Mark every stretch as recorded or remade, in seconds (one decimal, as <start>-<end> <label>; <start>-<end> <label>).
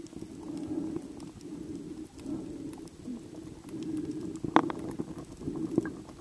0.0-6.2 recorded